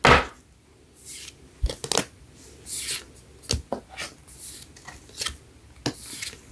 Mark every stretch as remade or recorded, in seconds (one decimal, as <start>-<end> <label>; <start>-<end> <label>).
0.0-6.5 recorded